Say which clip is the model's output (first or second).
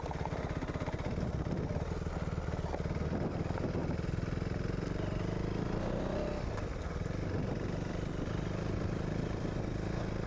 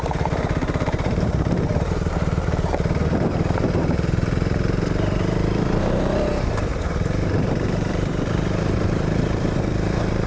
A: second